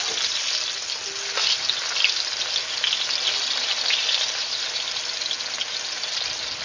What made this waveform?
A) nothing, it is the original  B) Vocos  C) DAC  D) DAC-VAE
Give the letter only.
A